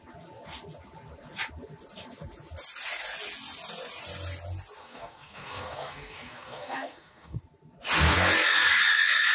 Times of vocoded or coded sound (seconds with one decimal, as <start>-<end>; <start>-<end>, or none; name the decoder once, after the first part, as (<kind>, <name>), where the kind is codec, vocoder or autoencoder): 4.8-7.4 (codec, SNAC)